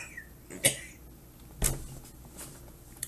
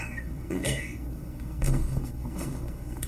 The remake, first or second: second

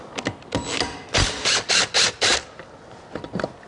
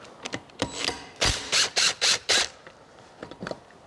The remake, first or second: second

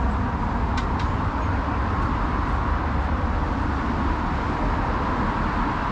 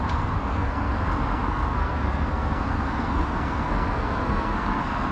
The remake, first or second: second